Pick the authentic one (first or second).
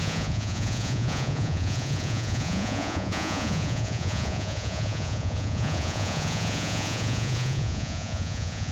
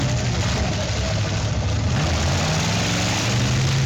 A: second